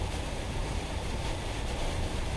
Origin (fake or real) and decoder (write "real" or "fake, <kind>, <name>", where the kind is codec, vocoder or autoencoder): fake, vocoder, BigVGAN v2